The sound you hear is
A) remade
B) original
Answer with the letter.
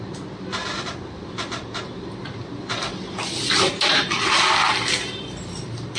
B